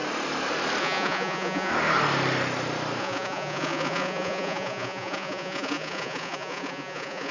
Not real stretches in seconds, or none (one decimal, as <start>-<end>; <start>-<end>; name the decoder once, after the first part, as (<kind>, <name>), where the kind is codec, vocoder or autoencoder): 0.8-1.7 (vocoder, Vocos); 3.0-7.3